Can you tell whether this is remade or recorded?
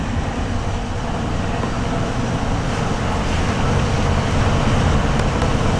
recorded